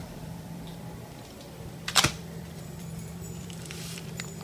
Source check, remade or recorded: remade